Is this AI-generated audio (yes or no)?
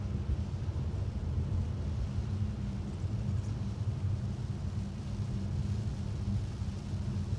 no